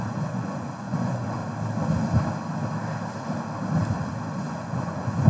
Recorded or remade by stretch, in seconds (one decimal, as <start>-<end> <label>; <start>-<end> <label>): 0.0-1.4 remade; 1.4-4.4 recorded; 4.4-5.3 remade